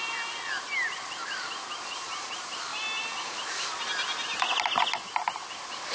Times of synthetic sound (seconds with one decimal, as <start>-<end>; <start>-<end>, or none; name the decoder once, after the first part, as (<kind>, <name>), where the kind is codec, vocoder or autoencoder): none